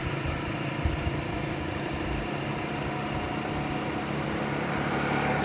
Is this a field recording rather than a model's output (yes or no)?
no